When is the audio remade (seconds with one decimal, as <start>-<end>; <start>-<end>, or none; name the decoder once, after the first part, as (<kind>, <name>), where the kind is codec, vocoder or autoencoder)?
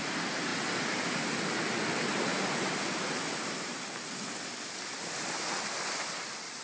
2.3-6.6 (vocoder, BigVGAN v2)